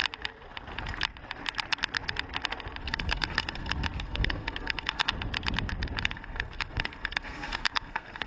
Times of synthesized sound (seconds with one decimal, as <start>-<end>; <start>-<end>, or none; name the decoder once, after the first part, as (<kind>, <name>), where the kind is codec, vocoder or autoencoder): 2.8-5.1 (codec, SNAC); 6.0-8.3